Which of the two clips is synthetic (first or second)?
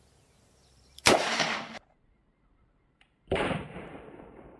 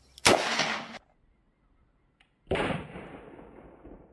first